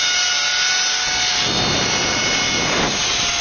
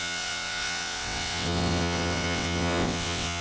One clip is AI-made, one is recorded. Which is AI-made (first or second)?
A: second